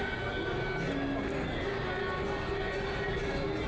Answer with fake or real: real